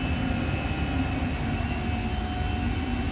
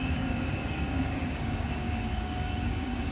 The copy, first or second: second